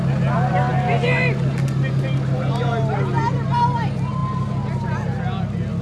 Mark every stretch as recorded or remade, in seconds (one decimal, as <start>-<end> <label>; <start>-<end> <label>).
0.0-5.8 recorded